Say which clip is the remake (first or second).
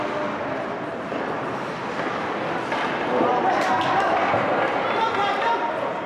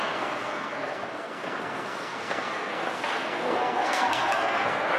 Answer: second